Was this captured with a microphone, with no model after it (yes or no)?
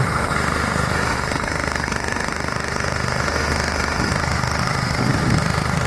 no